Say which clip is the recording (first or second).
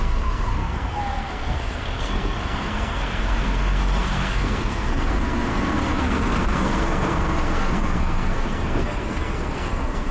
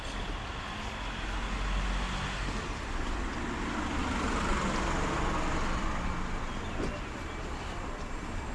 second